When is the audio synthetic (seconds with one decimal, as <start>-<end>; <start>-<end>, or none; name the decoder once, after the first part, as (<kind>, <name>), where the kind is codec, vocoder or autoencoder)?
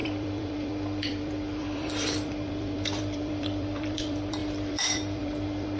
0.0-5.8 (vocoder, BigVGAN v2)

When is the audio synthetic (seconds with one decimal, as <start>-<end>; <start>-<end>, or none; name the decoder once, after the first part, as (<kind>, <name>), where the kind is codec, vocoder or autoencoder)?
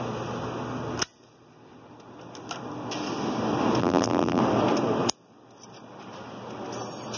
3.8-4.4 (vocoder, BigVGAN v2)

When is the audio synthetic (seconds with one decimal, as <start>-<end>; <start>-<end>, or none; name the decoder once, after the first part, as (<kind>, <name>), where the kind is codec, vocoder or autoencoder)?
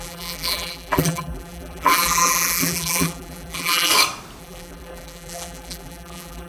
0.0-3.9 (vocoder, BigVGAN v2); 4.4-6.5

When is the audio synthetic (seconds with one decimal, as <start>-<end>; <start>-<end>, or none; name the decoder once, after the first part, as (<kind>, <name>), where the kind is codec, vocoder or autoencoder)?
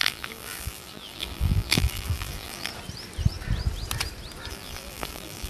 0.0-2.7 (vocoder, BigVGAN v2); 4.5-5.5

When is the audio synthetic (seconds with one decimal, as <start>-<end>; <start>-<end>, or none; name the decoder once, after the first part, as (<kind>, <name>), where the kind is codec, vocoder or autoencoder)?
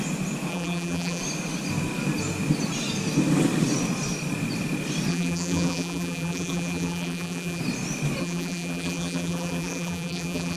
0.5-1.2 (vocoder, BigVGAN v2); 5.1-7.6; 8.2-10.6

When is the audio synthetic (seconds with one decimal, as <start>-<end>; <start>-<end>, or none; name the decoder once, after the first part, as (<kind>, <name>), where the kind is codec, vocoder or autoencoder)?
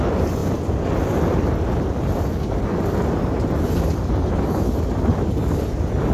none